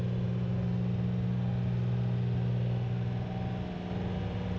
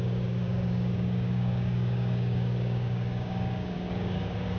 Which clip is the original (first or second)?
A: first